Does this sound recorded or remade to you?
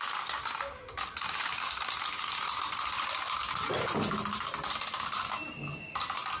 recorded